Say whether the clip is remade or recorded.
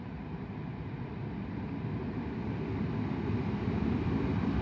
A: recorded